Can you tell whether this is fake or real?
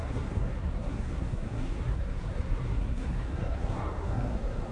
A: fake